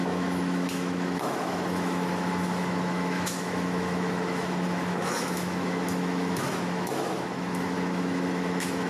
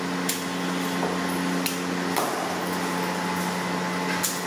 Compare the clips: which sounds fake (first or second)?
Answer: first